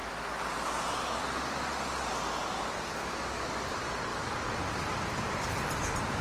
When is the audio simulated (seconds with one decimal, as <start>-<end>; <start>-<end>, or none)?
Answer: 3.0-3.6; 4.1-4.6